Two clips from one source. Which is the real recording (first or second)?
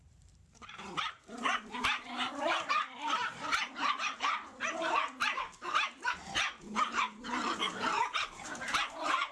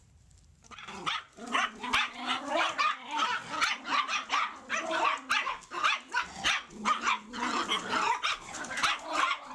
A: second